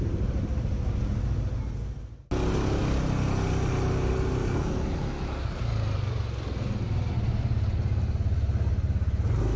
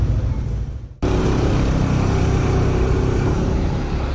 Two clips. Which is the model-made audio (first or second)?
second